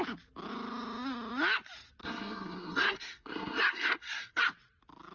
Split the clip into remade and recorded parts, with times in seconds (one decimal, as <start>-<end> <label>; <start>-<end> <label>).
0.0-2.0 recorded; 2.0-4.4 remade; 4.4-5.1 recorded